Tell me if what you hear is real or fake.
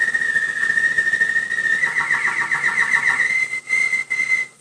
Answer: fake